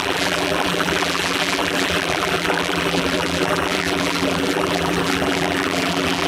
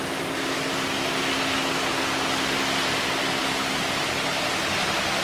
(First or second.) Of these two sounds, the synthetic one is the first